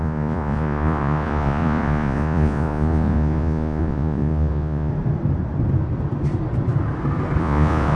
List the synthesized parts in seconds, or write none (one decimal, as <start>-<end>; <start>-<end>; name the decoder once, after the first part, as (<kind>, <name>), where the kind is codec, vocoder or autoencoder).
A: 0.0-4.9 (vocoder, Vocos); 7.4-8.0